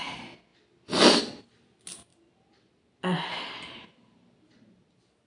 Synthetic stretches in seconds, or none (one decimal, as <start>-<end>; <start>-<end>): none